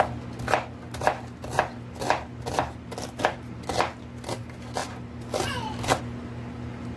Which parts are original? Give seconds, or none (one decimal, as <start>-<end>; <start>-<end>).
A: 0.0-7.0